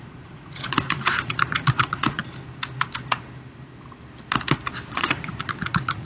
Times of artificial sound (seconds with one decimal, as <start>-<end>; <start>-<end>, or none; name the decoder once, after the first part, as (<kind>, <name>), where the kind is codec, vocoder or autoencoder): 0.0-2.2 (vocoder, Vocos); 4.9-6.1